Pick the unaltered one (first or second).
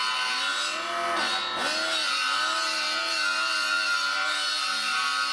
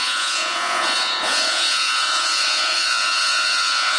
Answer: first